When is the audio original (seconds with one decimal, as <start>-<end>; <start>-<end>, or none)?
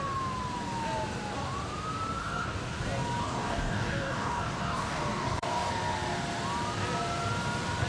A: 0.0-2.2; 2.8-3.2; 5.7-7.9